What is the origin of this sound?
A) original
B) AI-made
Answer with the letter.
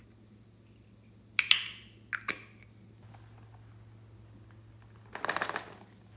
A